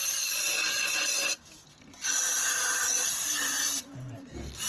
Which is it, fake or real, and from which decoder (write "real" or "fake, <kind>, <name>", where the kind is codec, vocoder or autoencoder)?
real